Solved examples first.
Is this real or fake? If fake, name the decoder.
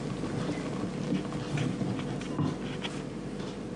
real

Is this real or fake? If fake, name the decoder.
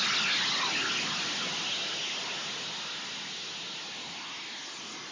real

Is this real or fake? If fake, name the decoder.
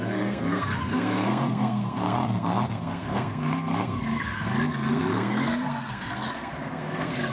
fake, codec, SNAC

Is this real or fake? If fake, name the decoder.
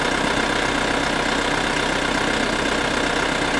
real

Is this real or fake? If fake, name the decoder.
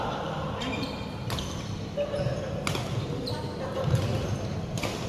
real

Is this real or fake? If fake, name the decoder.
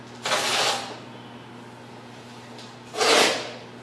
real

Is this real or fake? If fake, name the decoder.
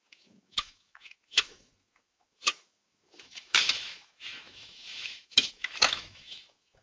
fake, autoencoder, DAC-VAE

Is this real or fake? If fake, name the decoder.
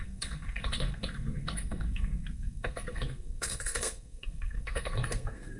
fake, codec, SNAC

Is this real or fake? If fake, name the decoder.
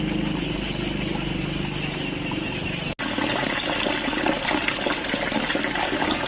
real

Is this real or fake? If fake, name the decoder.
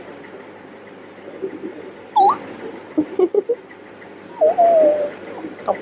real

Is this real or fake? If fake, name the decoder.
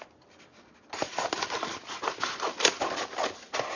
real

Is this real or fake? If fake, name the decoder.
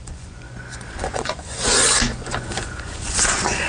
fake, vocoder, Vocos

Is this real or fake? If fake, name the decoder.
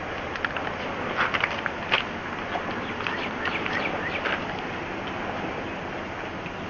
real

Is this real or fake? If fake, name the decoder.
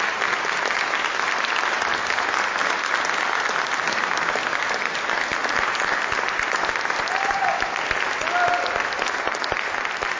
real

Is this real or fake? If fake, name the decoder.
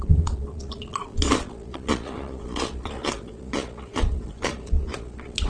fake, vocoder, Vocos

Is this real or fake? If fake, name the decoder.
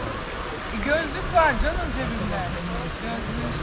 real